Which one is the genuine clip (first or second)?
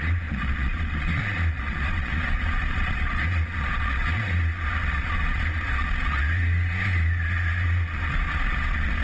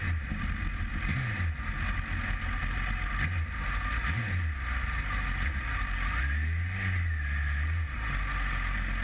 second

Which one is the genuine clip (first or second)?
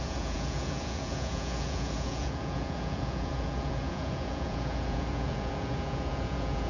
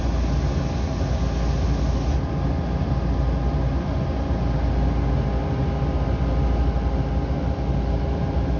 second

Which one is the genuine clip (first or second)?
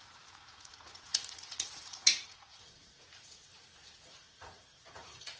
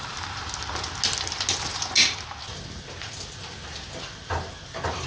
second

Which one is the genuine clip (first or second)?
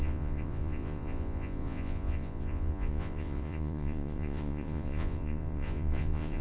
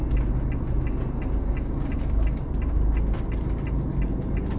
second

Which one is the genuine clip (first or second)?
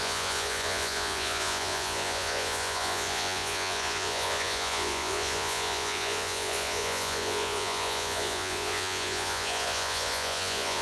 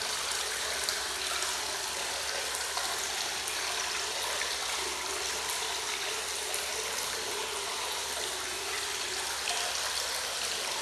second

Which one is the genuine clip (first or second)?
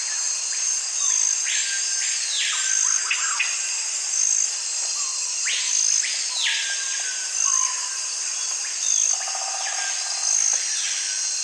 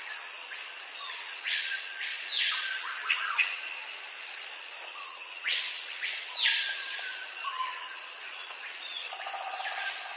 first